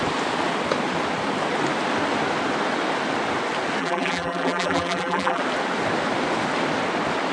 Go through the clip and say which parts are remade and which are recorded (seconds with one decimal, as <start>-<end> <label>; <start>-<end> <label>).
0.0-3.8 recorded; 3.8-5.4 remade; 5.4-7.3 recorded